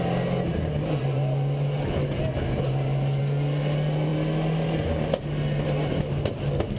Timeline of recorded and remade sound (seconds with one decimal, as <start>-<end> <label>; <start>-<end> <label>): 0.0-6.8 recorded